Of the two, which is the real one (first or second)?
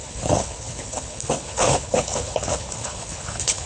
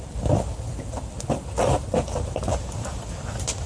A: second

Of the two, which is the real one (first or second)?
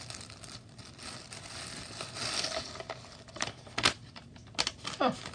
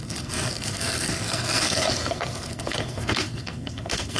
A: first